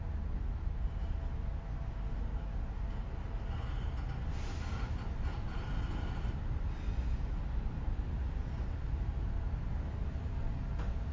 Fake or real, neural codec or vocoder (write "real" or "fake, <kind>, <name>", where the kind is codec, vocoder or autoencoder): real